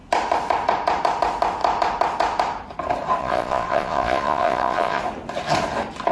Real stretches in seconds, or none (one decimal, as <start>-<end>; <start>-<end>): 0.0-3.2; 5.0-6.1